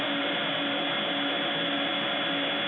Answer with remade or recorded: recorded